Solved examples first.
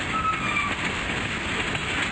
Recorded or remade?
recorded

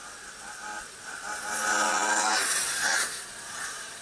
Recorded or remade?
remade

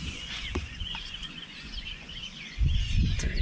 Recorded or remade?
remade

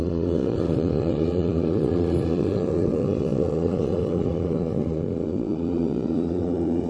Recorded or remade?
remade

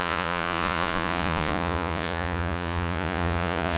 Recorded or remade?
remade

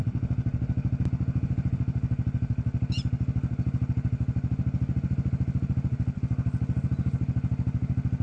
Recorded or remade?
recorded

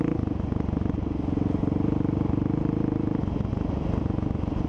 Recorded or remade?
recorded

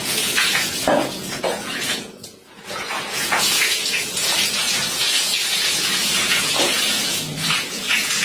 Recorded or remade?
remade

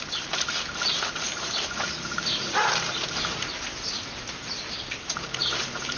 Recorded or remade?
recorded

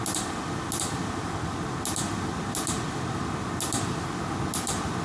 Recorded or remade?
recorded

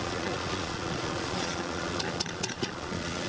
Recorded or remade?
remade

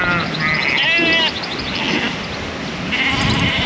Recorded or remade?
recorded